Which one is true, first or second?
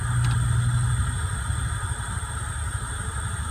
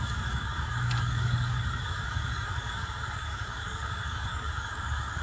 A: first